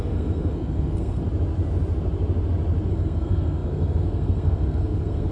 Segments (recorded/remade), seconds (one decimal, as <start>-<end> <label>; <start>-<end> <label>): 0.0-1.2 remade; 1.2-2.9 recorded; 2.9-5.3 remade